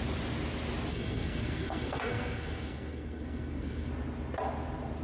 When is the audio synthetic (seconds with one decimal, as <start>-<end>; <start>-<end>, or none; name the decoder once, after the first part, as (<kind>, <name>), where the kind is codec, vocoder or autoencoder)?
0.9-3.9 (codec, SNAC)